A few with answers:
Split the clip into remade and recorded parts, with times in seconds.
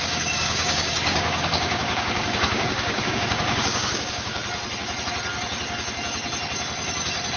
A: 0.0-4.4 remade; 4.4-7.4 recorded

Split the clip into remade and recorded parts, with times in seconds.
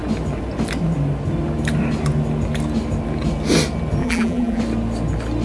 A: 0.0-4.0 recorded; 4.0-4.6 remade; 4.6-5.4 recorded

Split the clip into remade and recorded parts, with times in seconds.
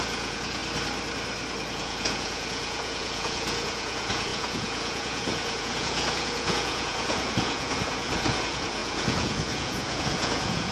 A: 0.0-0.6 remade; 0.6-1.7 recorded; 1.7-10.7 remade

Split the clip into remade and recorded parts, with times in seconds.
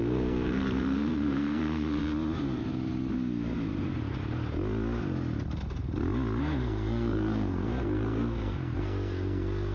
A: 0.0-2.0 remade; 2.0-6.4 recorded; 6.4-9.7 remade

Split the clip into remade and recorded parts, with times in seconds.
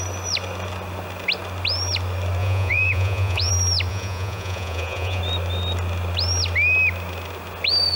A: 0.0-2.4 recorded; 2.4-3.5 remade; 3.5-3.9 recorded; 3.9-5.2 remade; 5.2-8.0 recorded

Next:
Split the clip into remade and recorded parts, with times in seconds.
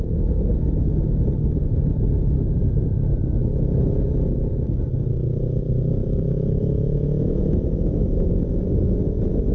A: 0.0-6.0 recorded; 6.0-8.3 remade; 8.3-9.5 recorded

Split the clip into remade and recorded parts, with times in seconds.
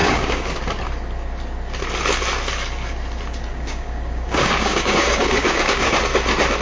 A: 0.0-0.6 remade; 0.6-3.5 recorded; 3.5-6.0 remade; 6.0-6.6 recorded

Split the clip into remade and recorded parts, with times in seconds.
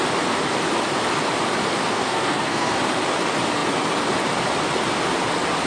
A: 0.0-1.8 recorded; 1.8-2.7 remade; 2.7-5.7 recorded